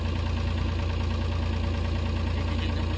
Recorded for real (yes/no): yes